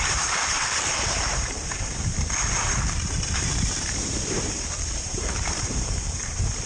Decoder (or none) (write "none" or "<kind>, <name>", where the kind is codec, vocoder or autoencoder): vocoder, BigVGAN v2